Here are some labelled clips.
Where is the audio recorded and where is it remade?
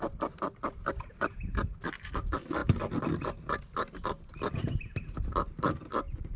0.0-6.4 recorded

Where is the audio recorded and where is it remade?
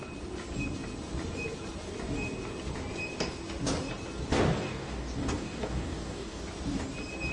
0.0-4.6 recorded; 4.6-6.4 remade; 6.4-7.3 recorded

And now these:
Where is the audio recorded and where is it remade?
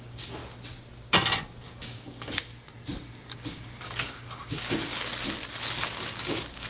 0.0-0.4 remade; 0.4-1.6 recorded; 1.6-2.5 remade; 2.5-3.2 recorded; 3.2-5.1 remade; 5.1-5.8 recorded; 5.8-6.7 remade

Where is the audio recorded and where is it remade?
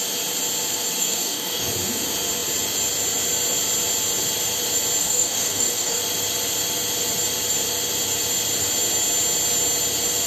0.0-1.0 recorded; 1.0-1.7 remade; 1.7-5.0 recorded; 5.0-6.0 remade; 6.0-10.3 recorded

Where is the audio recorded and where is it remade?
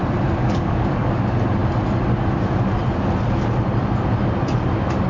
0.0-0.4 recorded; 0.4-1.2 remade; 1.2-5.1 recorded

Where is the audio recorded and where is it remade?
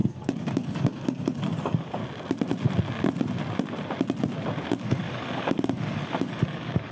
0.0-2.0 remade; 2.0-4.7 recorded; 4.7-6.9 remade